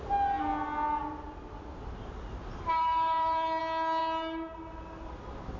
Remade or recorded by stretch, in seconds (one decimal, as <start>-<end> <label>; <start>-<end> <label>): 0.0-2.5 recorded; 2.5-3.6 remade; 3.6-5.6 recorded